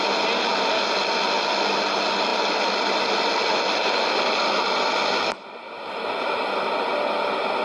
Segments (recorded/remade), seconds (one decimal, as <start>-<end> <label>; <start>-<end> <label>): 0.0-7.6 recorded